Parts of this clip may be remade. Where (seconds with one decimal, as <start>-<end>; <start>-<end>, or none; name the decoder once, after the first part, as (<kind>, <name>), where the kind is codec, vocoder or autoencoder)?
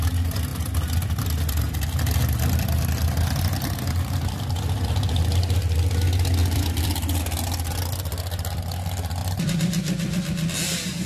6.4-7.2 (vocoder, BigVGAN v2); 9.2-10.2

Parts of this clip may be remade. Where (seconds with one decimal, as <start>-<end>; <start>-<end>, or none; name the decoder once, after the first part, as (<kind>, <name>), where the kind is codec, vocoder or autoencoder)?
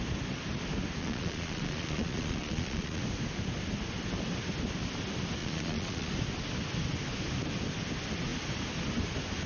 1.0-3.0 (vocoder, Vocos); 5.4-6.1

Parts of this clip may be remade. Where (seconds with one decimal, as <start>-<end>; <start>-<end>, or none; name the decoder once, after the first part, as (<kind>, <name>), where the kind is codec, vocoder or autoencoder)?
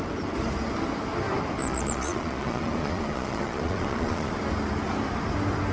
1.6-4.3 (vocoder, Vocos)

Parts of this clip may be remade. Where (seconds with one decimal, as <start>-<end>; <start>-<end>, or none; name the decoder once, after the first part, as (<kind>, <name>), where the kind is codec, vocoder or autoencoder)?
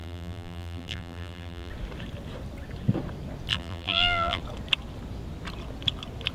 0.0-1.7 (vocoder, BigVGAN v2); 3.5-4.4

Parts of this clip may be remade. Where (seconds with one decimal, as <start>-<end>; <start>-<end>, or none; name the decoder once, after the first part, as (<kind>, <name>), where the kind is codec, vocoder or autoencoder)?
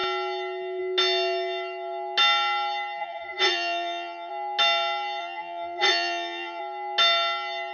3.0-4.3 (vocoder, Vocos); 5.2-6.6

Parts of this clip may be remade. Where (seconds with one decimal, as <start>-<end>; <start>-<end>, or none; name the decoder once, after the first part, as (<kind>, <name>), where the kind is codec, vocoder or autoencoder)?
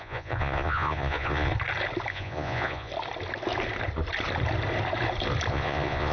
0.0-1.5 (vocoder, Vocos); 2.1-2.9; 5.5-6.1